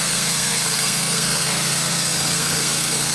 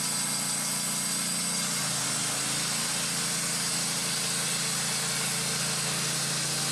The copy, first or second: first